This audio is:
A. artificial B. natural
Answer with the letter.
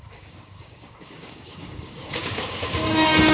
A